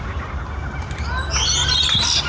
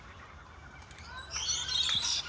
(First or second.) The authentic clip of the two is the first